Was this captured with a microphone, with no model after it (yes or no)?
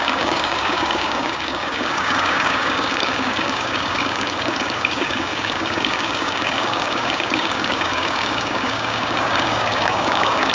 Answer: no